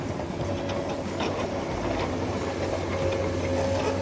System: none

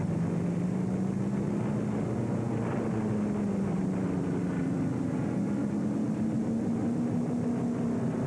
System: none